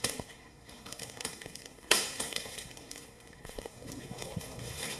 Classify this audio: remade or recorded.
remade